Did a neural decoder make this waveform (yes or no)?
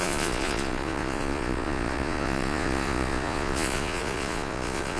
yes